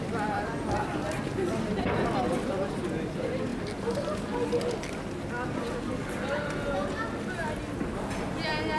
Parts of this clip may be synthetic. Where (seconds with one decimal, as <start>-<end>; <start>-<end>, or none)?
none